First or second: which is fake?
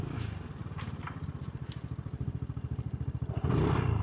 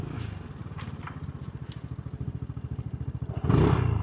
first